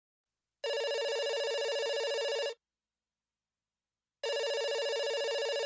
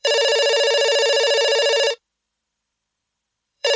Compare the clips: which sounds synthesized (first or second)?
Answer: second